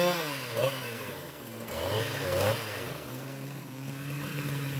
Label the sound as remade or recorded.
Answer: remade